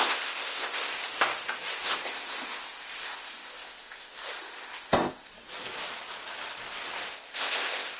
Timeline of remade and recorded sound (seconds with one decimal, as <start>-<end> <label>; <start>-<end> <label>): 0.0-1.1 remade; 1.1-1.7 recorded; 1.7-5.3 remade; 5.3-7.1 recorded; 7.1-8.0 remade